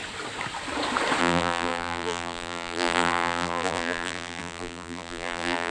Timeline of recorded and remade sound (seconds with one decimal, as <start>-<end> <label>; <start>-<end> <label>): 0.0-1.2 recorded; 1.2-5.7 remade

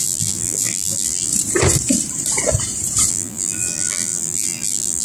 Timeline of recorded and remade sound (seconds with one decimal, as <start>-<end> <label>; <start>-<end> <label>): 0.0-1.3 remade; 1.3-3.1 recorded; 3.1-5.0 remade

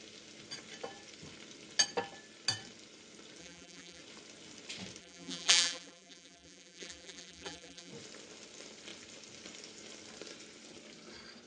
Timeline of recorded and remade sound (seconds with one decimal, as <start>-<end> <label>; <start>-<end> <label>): 0.0-3.4 recorded; 3.4-4.0 remade; 4.0-5.0 recorded; 5.0-7.9 remade; 7.9-11.5 recorded

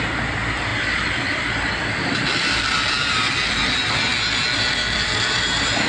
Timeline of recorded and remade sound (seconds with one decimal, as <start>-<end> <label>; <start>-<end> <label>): 0.0-4.1 remade; 4.1-4.7 recorded; 4.7-5.9 remade